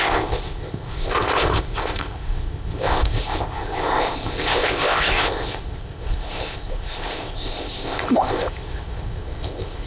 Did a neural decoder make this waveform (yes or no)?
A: yes